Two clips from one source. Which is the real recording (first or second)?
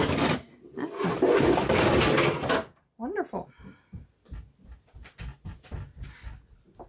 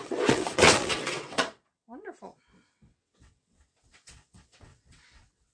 first